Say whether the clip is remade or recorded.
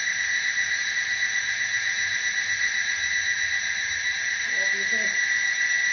recorded